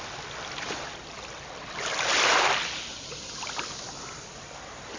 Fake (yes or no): no